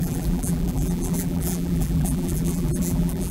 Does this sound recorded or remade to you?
remade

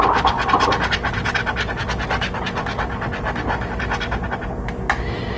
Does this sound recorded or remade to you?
recorded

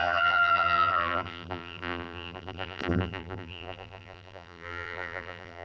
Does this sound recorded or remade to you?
remade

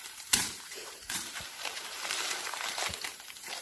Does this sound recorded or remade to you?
remade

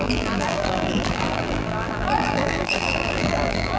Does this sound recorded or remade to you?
remade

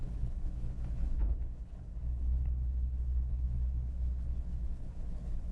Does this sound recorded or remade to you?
remade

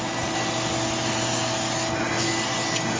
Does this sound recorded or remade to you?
recorded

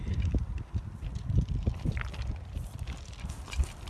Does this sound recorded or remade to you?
recorded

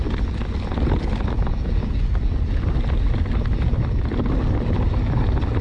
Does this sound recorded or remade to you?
recorded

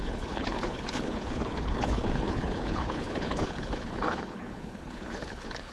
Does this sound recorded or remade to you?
remade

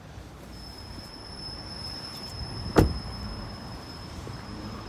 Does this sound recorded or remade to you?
remade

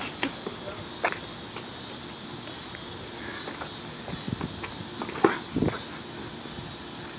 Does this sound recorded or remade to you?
recorded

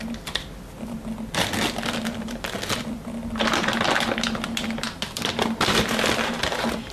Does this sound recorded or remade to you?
recorded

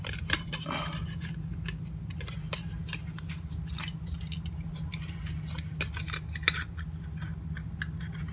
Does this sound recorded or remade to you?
recorded